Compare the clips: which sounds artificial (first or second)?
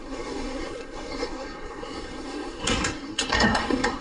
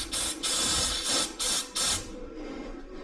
first